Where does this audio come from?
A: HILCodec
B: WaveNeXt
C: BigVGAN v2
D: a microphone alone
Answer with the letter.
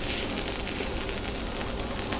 D